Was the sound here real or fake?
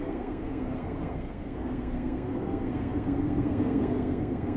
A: fake